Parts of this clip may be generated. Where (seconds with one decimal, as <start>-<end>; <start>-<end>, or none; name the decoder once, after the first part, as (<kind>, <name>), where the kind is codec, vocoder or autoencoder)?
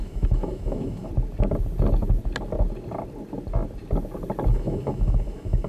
0.0-1.1 (autoencoder, DAC-VAE); 4.5-5.7